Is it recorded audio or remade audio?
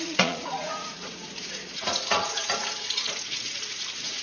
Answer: remade